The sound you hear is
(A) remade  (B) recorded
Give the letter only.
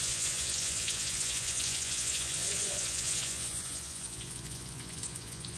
A